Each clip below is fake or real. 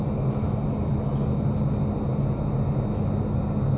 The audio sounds real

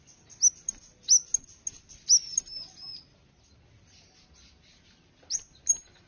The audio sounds real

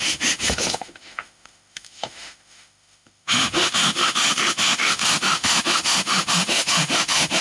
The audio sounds fake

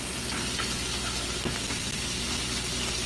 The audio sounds real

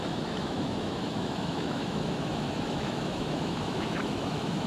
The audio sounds fake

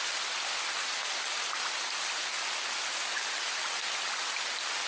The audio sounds real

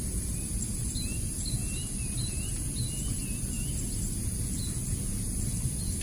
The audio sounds real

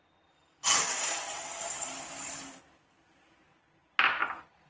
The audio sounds real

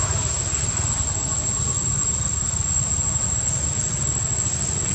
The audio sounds real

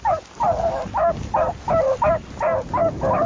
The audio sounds real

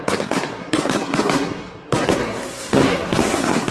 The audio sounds fake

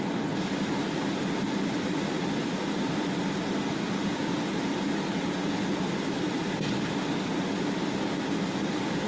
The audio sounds real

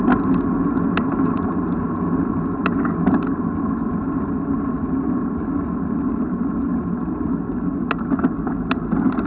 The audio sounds real